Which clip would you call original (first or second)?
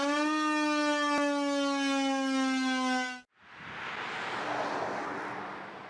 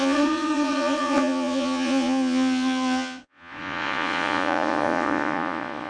first